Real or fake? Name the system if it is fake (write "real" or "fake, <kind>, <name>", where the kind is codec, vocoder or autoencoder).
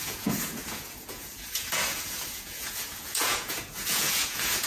fake, vocoder, Vocos